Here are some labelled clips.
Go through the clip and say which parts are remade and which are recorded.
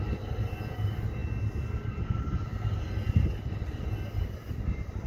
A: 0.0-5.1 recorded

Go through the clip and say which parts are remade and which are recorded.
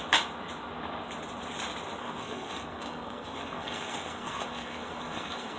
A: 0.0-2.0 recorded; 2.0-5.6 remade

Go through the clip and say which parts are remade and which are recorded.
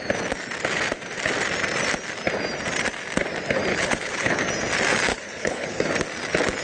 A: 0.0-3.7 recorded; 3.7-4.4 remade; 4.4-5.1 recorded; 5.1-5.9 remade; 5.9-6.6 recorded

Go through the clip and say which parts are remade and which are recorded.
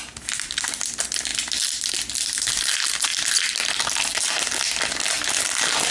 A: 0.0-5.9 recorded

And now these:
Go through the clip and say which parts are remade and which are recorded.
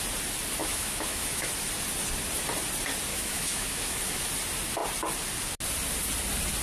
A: 0.0-0.6 recorded; 0.6-1.5 remade; 1.5-3.1 recorded; 3.1-4.3 remade; 4.3-6.6 recorded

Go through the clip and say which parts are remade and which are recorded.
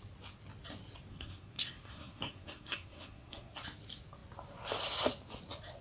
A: 0.0-1.1 recorded; 1.1-3.5 remade; 3.5-5.8 recorded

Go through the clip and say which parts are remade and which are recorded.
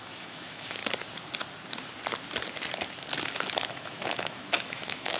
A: 0.0-0.8 remade; 0.8-3.7 recorded; 3.7-5.2 remade